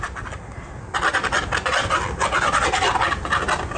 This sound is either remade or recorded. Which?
recorded